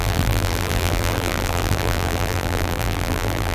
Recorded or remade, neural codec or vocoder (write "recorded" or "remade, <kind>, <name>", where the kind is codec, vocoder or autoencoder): remade, vocoder, BigVGAN v2